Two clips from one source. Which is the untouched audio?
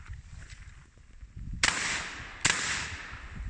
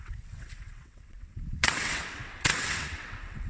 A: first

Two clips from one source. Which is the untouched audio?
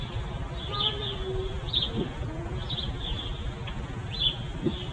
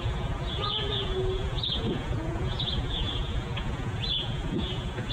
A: first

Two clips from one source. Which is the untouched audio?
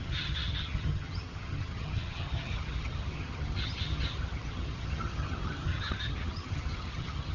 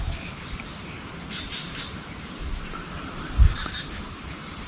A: second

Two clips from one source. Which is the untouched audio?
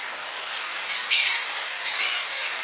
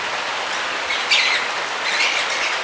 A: second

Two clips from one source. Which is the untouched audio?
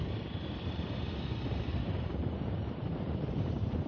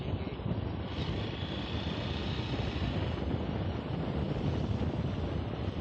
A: second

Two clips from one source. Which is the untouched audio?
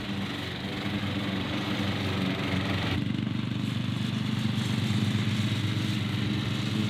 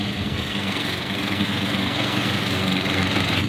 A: first